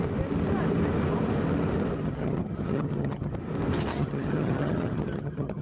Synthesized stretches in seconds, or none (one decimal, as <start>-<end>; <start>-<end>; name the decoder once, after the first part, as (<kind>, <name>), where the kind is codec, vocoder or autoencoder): 2.0-3.3 (vocoder, HiFi-GAN); 3.9-5.6